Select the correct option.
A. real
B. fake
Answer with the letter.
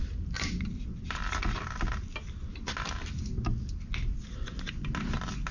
A